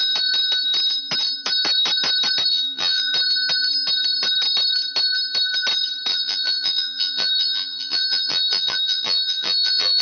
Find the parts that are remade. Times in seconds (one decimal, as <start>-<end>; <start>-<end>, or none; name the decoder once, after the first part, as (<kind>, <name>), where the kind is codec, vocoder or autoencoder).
2.5-3.1 (vocoder, BigVGAN v2); 6.1-10.0